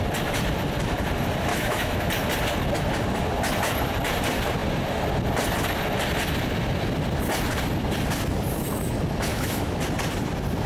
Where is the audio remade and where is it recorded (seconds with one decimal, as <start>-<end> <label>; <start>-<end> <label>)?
0.0-1.5 recorded; 1.5-2.0 remade; 2.0-9.3 recorded; 9.3-9.8 remade; 9.8-10.7 recorded